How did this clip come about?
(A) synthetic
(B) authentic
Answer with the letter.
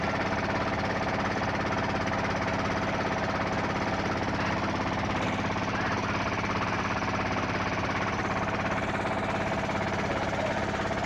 B